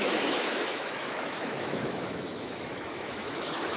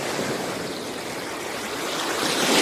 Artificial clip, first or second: first